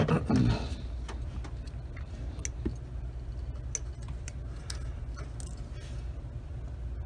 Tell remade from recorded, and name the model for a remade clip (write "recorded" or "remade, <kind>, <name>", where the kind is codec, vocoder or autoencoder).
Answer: recorded